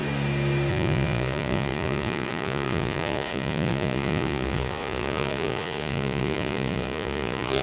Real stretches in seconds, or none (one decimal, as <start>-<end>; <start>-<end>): 0.0-0.7